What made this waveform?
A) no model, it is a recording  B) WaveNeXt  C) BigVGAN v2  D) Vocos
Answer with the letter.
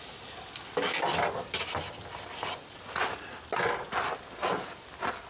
A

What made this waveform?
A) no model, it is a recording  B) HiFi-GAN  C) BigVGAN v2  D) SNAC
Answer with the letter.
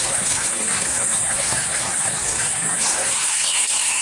D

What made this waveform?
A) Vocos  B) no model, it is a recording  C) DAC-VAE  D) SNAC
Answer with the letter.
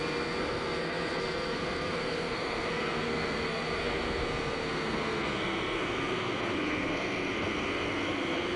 D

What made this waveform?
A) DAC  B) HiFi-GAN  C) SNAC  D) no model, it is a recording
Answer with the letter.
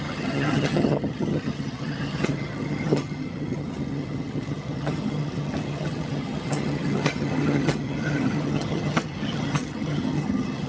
B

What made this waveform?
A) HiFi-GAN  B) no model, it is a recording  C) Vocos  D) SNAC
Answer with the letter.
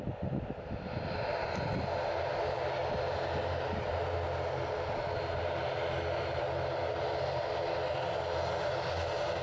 B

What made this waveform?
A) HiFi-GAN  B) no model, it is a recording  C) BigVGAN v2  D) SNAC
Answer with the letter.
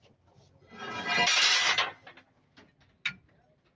B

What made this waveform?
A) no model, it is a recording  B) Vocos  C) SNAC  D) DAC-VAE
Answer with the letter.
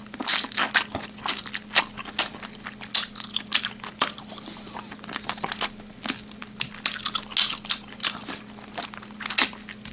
A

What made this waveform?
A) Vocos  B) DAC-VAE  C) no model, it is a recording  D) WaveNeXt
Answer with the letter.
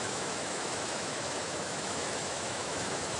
B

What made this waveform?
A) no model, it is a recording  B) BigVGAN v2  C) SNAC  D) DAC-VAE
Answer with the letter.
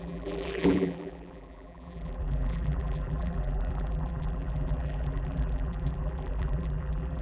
B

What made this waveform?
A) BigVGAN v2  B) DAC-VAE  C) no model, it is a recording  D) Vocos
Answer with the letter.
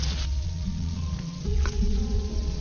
D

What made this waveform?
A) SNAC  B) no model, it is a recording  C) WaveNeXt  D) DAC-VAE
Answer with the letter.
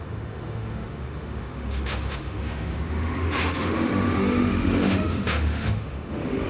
D